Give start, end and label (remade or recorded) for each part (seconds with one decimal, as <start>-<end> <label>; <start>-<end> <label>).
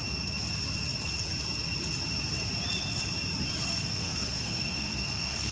0.0-3.7 recorded; 3.7-5.5 remade